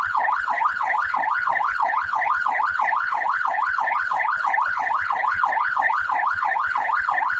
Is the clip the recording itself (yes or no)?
no